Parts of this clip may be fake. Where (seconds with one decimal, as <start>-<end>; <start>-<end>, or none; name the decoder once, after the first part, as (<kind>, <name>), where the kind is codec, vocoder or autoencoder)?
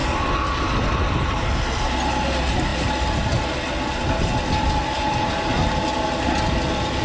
none